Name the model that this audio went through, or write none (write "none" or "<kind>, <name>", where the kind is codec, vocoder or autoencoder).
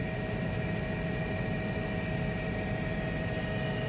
none